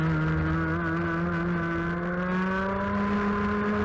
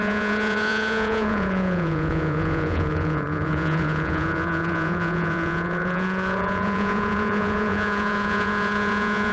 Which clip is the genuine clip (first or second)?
first